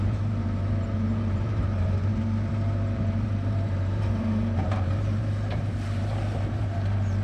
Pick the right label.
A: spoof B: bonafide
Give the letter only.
A